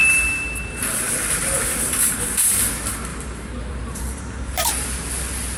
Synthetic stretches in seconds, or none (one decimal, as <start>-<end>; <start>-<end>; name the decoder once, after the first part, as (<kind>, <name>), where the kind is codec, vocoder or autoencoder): 0.0-1.5 (vocoder, BigVGAN v2); 3.1-4.7